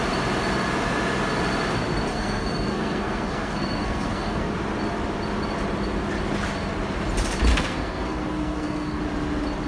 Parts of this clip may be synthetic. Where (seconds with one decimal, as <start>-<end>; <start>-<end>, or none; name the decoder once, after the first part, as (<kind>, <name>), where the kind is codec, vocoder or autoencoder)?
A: 2.1-4.5 (codec, SNAC); 7.5-9.0